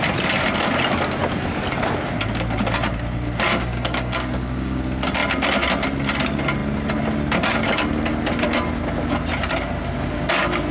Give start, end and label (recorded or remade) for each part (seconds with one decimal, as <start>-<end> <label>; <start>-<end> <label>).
0.0-3.5 recorded; 3.5-4.8 remade; 4.8-10.7 recorded